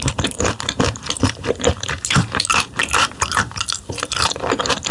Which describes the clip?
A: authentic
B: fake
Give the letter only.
B